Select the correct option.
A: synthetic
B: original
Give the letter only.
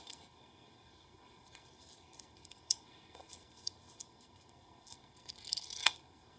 A